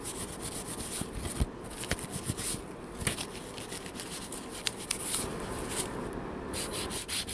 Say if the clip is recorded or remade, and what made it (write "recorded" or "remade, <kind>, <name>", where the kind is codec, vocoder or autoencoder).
recorded